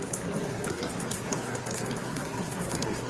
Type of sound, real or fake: fake